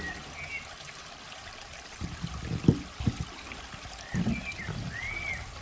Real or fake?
real